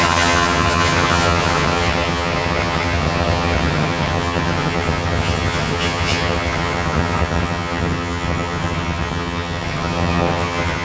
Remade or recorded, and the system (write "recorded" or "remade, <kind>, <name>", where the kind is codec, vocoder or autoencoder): remade, vocoder, HiFi-GAN